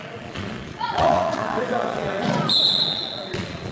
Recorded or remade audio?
remade